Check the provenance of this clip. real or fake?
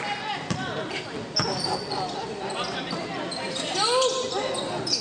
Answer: real